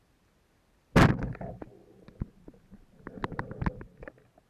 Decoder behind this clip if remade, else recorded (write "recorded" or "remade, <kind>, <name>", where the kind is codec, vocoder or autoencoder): recorded